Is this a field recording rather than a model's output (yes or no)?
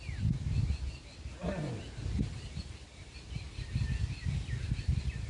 yes